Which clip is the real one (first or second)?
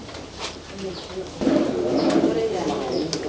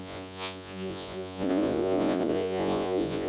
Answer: first